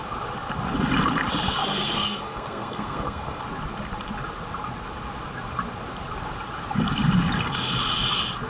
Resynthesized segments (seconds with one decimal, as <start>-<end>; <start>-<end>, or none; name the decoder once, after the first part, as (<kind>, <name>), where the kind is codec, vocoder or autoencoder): 1.6-3.4 (codec, SNAC)